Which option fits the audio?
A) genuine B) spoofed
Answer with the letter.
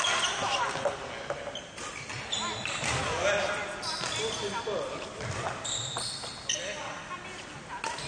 A